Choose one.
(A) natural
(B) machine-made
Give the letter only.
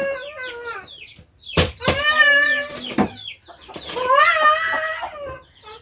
A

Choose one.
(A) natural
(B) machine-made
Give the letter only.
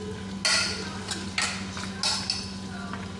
A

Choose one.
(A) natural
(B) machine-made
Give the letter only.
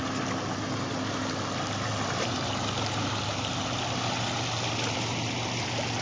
A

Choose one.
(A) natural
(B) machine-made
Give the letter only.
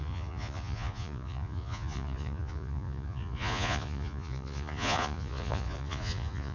B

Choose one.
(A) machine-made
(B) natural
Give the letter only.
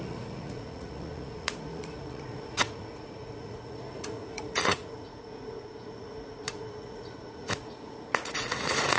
A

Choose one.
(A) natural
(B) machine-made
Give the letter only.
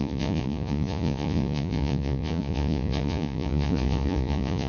B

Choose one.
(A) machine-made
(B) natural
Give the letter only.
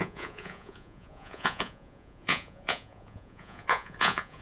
A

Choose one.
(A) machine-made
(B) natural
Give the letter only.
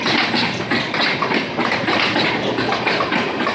B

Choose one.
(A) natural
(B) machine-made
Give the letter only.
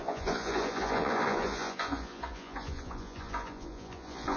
B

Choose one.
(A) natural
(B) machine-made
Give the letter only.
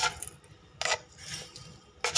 A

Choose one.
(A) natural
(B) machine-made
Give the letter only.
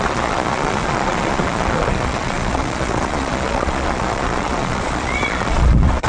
B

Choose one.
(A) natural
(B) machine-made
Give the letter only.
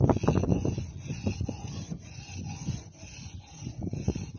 B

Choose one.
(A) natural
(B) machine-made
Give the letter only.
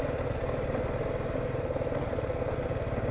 A